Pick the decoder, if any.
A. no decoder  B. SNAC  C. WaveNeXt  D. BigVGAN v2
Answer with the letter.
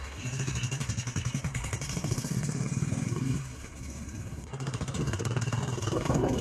B